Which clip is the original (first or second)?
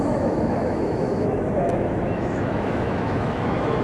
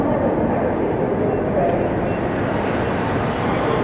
second